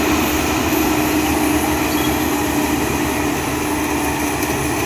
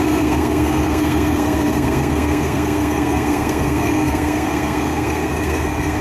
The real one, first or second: first